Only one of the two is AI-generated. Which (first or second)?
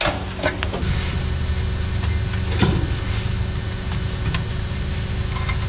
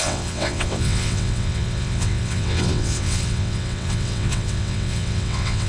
second